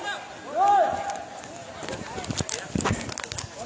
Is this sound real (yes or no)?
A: yes